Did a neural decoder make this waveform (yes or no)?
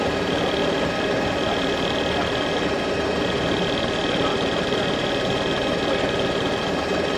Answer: no